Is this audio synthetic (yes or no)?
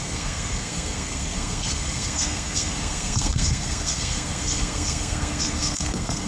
yes